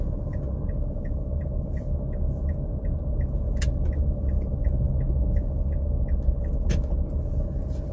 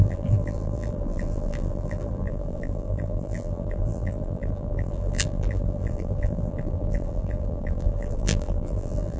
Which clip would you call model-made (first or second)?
second